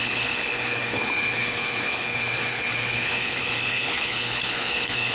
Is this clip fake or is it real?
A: fake